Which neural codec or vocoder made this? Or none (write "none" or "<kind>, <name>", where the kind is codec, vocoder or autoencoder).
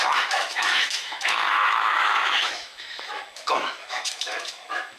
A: autoencoder, DAC-VAE